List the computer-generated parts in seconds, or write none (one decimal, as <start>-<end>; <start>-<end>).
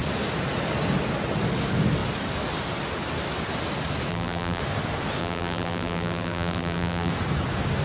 4.1-4.6; 5.2-7.1